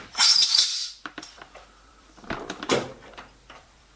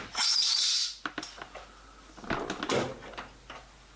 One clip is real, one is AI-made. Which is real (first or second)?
second